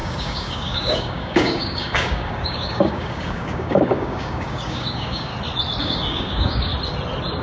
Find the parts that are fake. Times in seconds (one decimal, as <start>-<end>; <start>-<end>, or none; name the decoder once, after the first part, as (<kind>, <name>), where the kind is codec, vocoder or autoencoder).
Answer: 0.0-5.3 (codec, DAC); 5.8-6.7